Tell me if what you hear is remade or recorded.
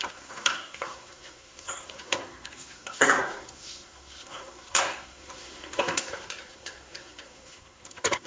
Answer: remade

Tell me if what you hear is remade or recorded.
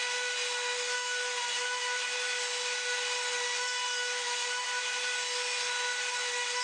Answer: recorded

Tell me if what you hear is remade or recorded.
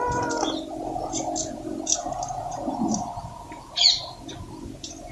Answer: recorded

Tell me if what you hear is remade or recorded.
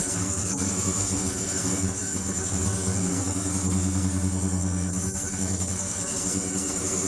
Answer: remade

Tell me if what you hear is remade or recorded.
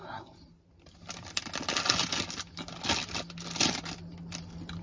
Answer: recorded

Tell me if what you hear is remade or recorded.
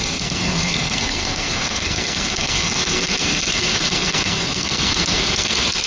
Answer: remade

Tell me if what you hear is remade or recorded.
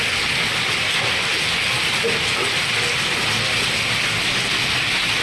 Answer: recorded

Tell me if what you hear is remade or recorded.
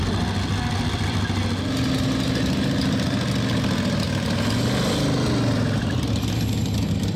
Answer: recorded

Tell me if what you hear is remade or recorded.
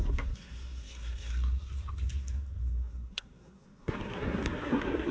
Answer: remade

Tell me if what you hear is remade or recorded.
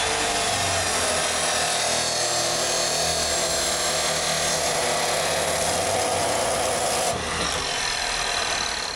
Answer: recorded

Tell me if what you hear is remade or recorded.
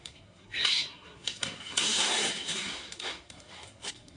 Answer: remade